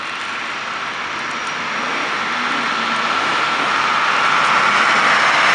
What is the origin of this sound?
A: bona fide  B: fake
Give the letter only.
A